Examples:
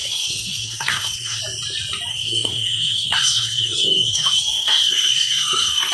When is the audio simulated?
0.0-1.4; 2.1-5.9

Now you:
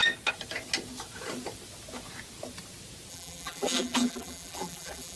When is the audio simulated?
3.1-5.2

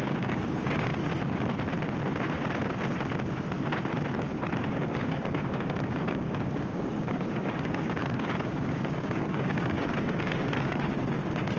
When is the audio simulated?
0.0-0.9; 4.6-11.6

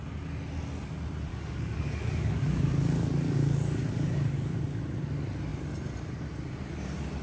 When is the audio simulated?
1.3-4.8